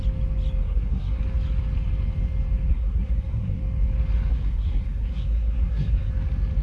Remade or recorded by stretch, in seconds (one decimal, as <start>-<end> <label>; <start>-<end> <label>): 0.0-0.6 recorded; 0.6-1.2 remade; 1.2-2.7 recorded; 2.7-3.6 remade; 3.6-4.3 recorded; 4.3-6.1 remade; 6.1-6.6 recorded